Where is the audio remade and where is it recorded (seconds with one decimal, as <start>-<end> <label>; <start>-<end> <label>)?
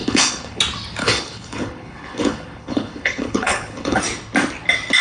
0.0-0.6 remade; 0.6-1.0 recorded; 1.0-4.0 remade; 4.0-5.0 recorded